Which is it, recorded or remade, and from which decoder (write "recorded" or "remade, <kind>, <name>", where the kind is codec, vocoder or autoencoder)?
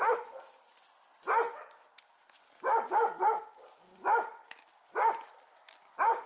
recorded